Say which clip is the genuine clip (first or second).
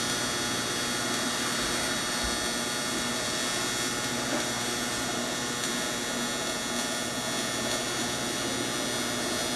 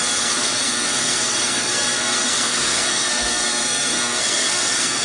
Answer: first